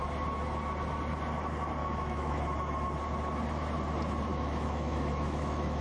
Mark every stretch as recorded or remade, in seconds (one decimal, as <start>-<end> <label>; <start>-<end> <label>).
0.0-1.8 recorded; 1.8-2.4 remade; 2.4-4.3 recorded; 4.3-5.8 remade